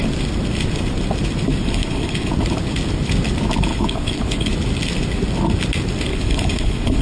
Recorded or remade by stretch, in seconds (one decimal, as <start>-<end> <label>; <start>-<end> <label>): 0.0-1.6 recorded; 1.6-2.3 remade; 2.3-3.7 recorded; 3.7-4.5 remade; 4.5-6.1 recorded; 6.1-7.0 remade